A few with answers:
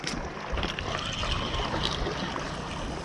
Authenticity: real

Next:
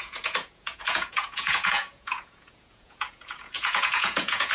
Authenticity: fake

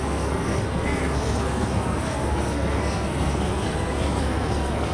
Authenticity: fake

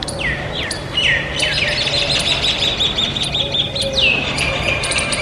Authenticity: real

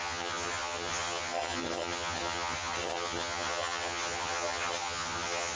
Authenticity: fake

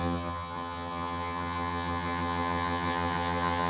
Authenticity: fake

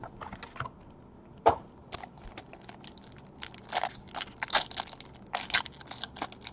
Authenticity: real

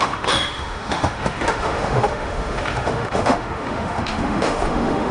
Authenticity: fake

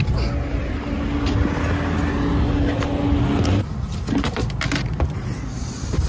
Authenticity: real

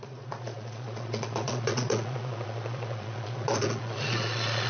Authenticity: fake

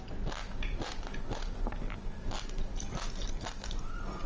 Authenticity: real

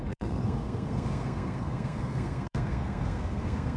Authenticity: fake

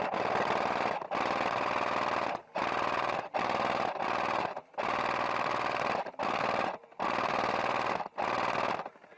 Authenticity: real